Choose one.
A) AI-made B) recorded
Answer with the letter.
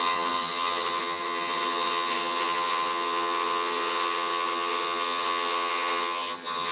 A